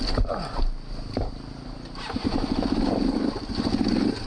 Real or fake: real